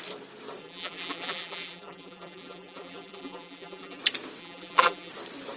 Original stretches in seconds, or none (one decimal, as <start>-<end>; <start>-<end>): 0.0-0.6; 4.0-4.4; 5.1-5.6